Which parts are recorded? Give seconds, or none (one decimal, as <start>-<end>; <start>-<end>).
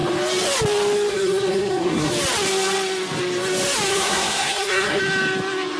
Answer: 0.0-1.1; 2.1-3.9; 5.0-5.8